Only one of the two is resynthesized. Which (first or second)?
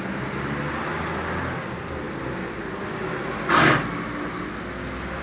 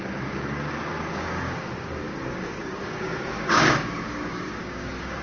second